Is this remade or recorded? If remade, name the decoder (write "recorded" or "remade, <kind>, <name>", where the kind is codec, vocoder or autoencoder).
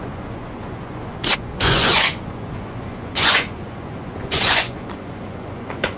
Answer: remade, vocoder, Vocos